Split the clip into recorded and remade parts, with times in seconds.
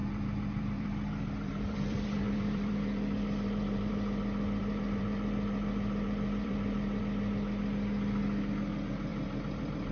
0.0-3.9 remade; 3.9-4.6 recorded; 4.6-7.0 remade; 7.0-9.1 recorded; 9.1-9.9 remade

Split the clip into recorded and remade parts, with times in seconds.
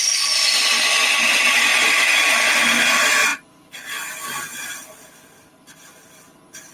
0.0-6.7 recorded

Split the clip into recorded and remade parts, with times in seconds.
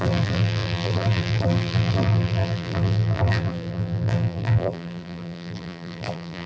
0.0-6.5 remade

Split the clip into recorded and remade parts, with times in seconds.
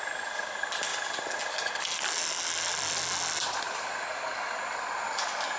0.0-5.6 recorded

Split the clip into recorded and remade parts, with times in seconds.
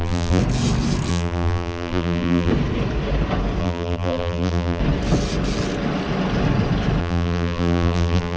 0.0-0.4 remade; 0.4-1.1 recorded; 1.1-2.5 remade; 2.5-3.6 recorded; 3.6-4.8 remade; 4.8-7.0 recorded; 7.0-8.4 remade